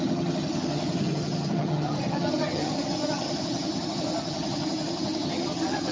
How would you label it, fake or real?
fake